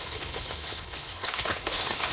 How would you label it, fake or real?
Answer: fake